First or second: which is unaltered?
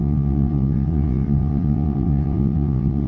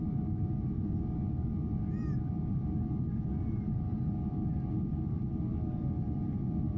second